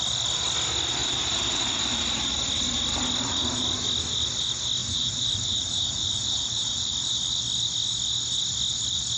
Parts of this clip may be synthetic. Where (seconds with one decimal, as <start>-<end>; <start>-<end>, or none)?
1.0-2.4; 4.8-7.4